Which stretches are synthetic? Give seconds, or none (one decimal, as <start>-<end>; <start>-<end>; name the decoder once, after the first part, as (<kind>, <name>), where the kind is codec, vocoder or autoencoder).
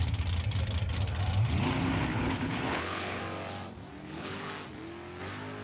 2.1-3.2 (codec, HILCodec); 4.0-4.5